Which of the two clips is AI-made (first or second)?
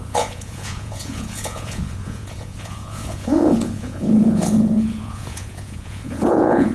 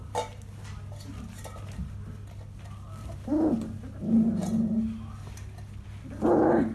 first